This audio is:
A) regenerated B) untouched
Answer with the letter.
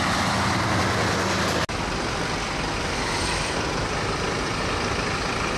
B